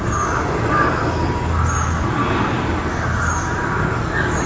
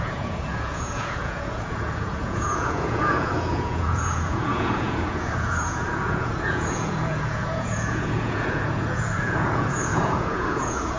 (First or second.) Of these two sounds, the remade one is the second